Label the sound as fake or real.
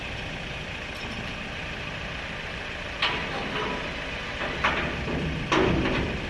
real